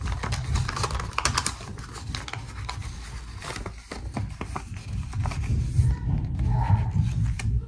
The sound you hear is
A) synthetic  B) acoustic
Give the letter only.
B